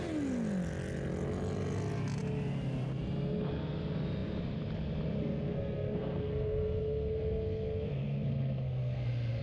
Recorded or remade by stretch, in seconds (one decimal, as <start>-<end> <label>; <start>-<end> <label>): 0.0-5.2 recorded; 5.2-9.4 remade